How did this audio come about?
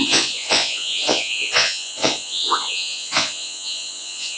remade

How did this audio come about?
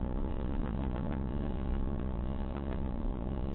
remade